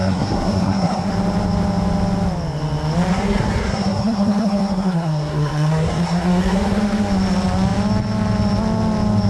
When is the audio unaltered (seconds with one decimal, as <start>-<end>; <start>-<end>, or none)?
1.1-3.1; 6.8-9.3